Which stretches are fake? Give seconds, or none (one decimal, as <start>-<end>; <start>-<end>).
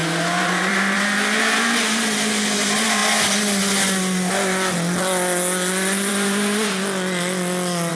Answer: 0.0-1.6